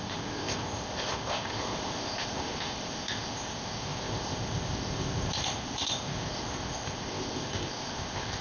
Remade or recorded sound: remade